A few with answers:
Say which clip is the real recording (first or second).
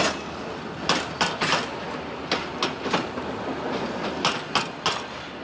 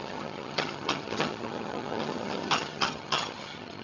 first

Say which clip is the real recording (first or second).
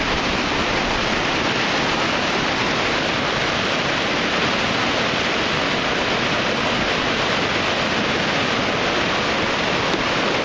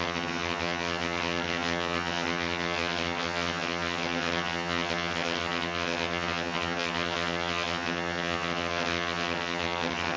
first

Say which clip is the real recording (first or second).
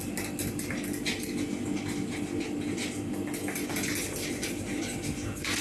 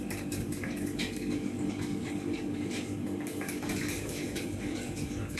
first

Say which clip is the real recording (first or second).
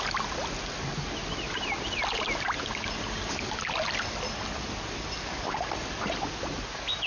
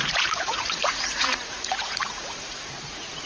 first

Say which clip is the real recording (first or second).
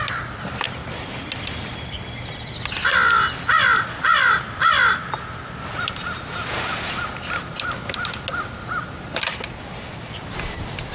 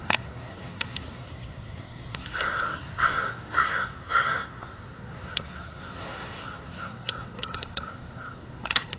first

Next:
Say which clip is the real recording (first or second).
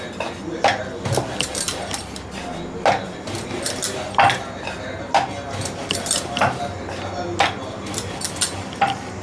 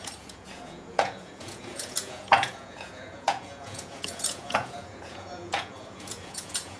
first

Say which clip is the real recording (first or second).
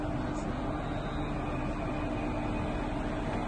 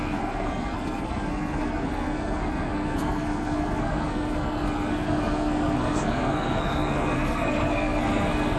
first